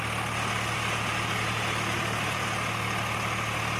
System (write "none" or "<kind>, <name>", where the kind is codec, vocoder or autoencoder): none